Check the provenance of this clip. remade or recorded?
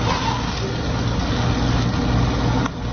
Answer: recorded